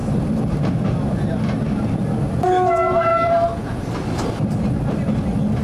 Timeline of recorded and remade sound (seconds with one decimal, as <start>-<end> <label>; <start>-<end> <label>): 0.0-1.2 remade; 1.2-5.6 recorded